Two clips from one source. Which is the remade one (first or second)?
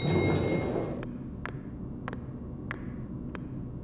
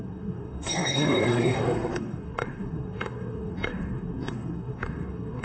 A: second